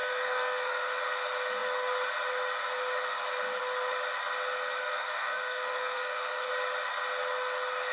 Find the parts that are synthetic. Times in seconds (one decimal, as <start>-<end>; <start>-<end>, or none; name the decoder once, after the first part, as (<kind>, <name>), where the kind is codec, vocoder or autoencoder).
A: 0.0-1.0 (codec, SNAC); 4.8-6.5